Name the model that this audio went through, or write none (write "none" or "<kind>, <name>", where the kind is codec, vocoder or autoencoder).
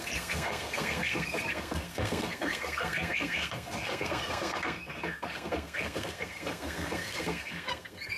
codec, SNAC